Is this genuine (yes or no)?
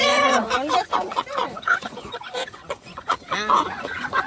no